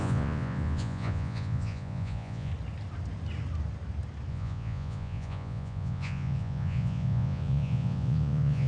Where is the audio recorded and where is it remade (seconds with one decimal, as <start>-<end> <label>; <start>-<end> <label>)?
0.0-2.5 remade; 2.5-4.3 recorded; 4.3-8.7 remade